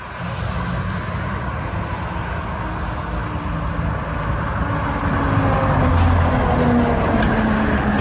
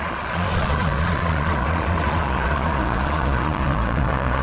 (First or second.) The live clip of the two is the first